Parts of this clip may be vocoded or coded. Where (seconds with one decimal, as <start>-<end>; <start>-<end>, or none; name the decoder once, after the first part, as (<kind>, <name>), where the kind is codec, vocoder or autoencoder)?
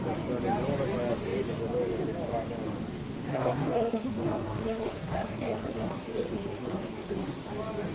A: 3.3-7.5 (codec, SNAC)